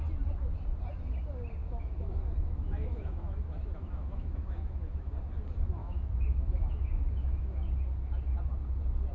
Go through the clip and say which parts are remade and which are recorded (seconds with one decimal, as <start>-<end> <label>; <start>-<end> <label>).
0.0-1.6 recorded; 1.6-5.1 remade; 5.1-5.8 recorded; 5.8-7.6 remade; 7.6-9.1 recorded